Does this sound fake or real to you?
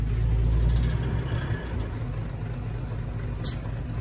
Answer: real